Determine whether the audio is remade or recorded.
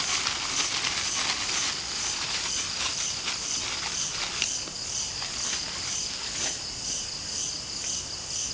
recorded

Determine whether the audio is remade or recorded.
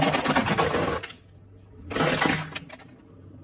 recorded